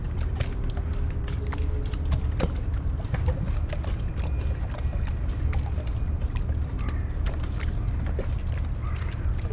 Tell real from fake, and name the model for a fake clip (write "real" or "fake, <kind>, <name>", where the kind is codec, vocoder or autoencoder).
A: real